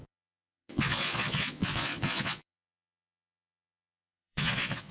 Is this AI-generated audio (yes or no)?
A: yes